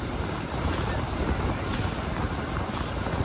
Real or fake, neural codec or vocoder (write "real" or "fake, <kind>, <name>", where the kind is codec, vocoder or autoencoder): real